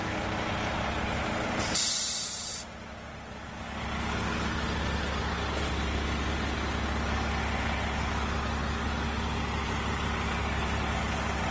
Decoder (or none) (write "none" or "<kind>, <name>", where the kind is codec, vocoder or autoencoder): none